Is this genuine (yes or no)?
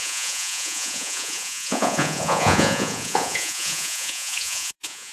no